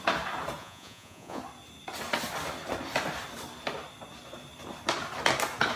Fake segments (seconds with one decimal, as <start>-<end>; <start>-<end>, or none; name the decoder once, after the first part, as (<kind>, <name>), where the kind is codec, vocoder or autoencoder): 0.6-1.4 (vocoder, Vocos)